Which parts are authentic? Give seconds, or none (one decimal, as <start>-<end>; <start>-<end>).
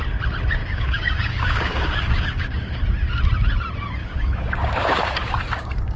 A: 0.0-0.6; 2.8-4.0